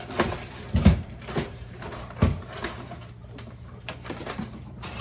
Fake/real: fake